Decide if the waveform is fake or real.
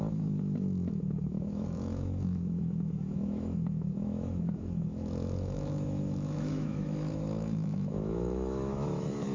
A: fake